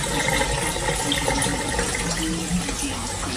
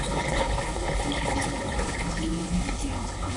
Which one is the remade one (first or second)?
second